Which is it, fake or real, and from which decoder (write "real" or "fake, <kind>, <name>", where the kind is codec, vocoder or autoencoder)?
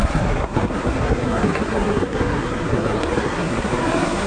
fake, codec, SNAC